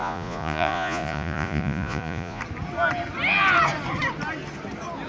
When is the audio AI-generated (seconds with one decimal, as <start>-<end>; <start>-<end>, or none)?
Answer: 0.0-2.4